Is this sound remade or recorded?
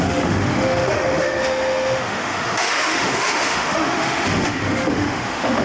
remade